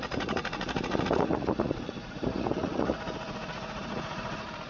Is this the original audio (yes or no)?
no